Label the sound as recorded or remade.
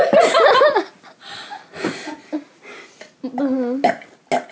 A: recorded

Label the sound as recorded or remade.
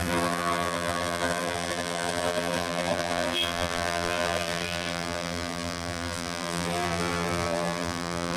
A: remade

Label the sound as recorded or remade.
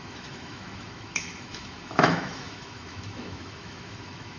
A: remade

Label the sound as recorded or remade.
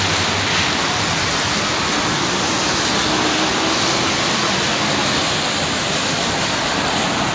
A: recorded